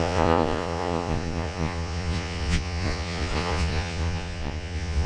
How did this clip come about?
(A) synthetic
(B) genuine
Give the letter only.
A